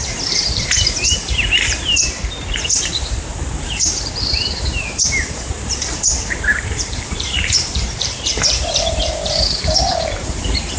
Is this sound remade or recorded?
remade